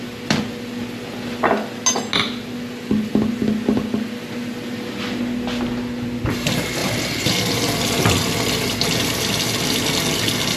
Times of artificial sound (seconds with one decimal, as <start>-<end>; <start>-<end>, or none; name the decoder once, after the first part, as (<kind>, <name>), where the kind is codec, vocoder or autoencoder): 6.8-7.6 (vocoder, BigVGAN v2)